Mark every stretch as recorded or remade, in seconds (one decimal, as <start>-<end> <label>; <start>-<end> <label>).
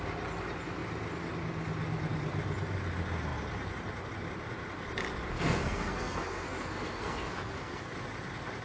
0.0-5.3 recorded; 5.3-7.9 remade; 7.9-8.6 recorded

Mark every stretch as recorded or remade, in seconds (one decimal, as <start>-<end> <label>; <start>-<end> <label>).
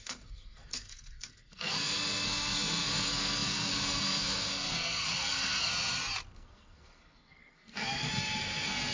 0.0-5.7 remade; 5.7-6.3 recorded; 6.3-8.9 remade